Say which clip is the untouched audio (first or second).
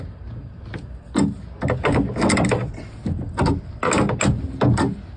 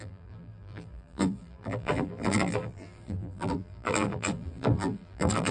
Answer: first